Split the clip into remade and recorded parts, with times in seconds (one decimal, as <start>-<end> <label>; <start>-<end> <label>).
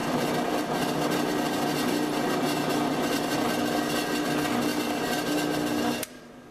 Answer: 0.0-6.5 recorded